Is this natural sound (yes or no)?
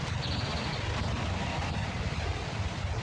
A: yes